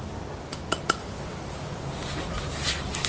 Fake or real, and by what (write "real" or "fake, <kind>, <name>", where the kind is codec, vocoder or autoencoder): real